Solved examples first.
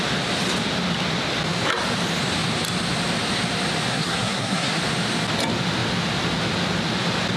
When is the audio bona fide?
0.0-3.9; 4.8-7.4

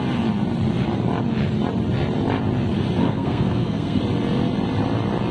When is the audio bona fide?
0.0-3.0; 4.0-5.3

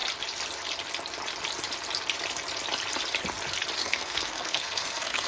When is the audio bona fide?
0.0-3.8

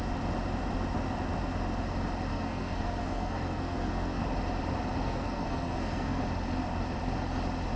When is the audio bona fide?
0.0-2.3; 4.2-5.0; 6.2-7.8

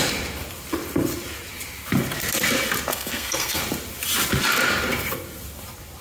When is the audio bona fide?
0.0-2.9; 3.6-6.0

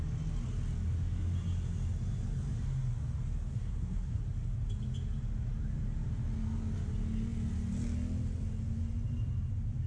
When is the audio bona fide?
0.0-3.5; 4.2-9.9

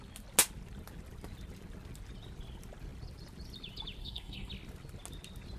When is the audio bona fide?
0.0-4.0; 4.5-5.6

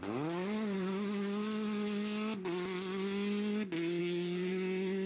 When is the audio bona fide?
0.0-4.0; 4.5-5.1